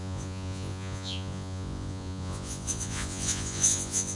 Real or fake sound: fake